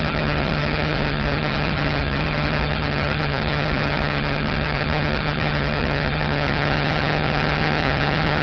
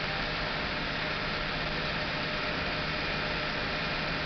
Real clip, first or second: second